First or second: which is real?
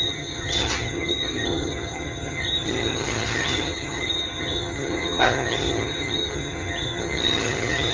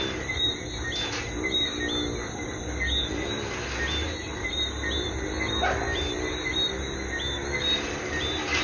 second